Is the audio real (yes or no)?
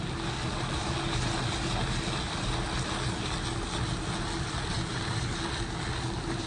yes